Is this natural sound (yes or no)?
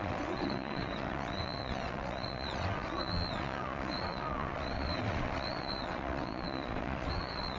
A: no